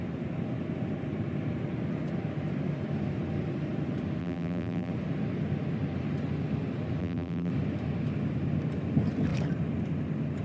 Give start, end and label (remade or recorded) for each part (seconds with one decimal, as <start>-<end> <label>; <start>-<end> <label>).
0.0-4.2 recorded; 4.2-4.9 remade; 4.9-7.0 recorded; 7.0-7.5 remade; 7.5-10.4 recorded